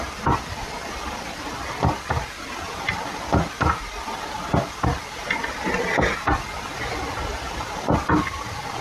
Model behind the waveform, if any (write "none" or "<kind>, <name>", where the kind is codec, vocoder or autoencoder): none